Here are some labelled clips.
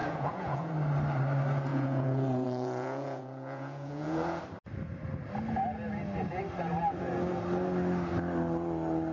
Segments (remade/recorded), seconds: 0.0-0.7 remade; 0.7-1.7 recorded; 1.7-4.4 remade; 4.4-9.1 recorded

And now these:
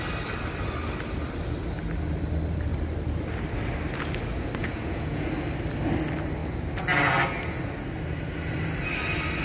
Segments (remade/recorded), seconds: 0.0-4.6 recorded; 4.6-5.3 remade; 5.3-9.4 recorded

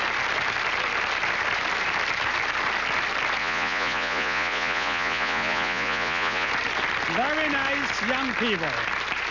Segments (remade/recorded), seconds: 0.0-3.4 recorded; 3.4-6.5 remade; 6.5-9.3 recorded

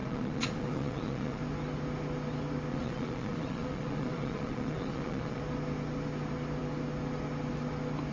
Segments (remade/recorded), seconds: 0.0-1.4 remade; 1.4-2.7 recorded; 2.7-5.4 remade; 5.4-8.1 recorded

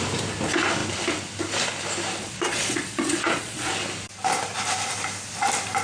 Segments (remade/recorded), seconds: 0.0-2.2 recorded; 2.2-3.7 remade; 3.7-5.8 recorded

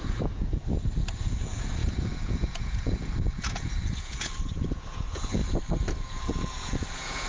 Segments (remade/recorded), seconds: 0.0-0.6 remade; 0.6-1.2 recorded; 1.2-5.4 remade; 5.4-5.9 recorded; 5.9-7.3 remade

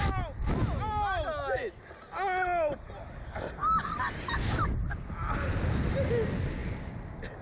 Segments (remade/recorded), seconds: 0.0-7.4 recorded

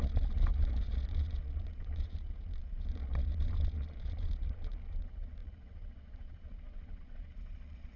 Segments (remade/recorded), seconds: 0.0-8.0 remade